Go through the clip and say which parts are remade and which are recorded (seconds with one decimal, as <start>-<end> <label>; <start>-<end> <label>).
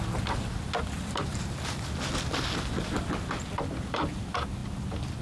0.0-5.2 recorded